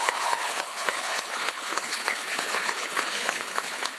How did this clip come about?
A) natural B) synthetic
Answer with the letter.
B